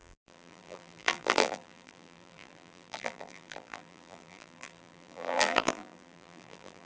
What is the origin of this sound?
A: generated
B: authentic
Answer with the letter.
A